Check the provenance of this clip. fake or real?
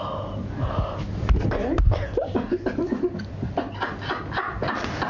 real